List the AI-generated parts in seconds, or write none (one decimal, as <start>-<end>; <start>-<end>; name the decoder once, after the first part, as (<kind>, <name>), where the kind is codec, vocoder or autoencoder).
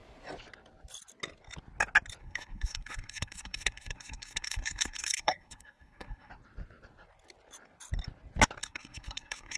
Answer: 2.2-6.3 (codec, SNAC); 8.6-9.6